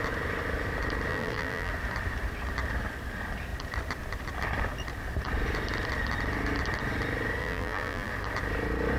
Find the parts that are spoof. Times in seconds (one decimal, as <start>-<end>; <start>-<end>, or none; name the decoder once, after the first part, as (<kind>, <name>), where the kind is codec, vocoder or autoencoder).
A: 1.1-1.7 (vocoder, BigVGAN v2); 7.4-8.1